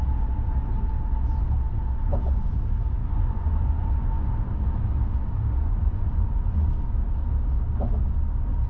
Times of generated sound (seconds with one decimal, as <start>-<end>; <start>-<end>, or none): 3.0-4.4; 5.6-6.7